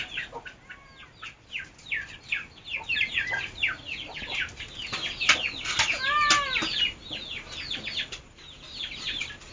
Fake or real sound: real